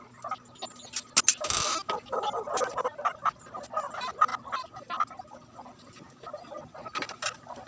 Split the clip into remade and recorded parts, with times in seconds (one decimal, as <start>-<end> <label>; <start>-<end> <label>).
0.0-7.7 recorded

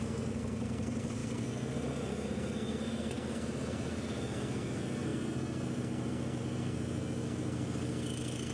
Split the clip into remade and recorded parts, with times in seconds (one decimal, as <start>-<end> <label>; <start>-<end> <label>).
0.0-8.5 remade

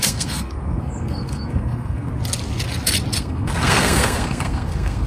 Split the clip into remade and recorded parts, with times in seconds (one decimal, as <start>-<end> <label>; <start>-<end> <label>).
0.0-2.1 remade; 2.1-3.2 recorded; 3.2-5.1 remade